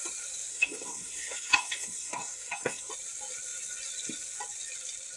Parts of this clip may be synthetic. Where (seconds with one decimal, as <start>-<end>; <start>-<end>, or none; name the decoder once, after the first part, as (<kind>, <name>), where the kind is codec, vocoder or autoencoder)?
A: 0.5-2.9 (codec, SNAC)